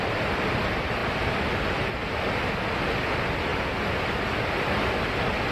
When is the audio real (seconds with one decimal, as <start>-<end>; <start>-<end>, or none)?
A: 0.0-5.5